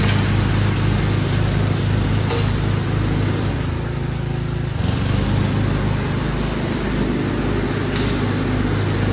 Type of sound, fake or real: real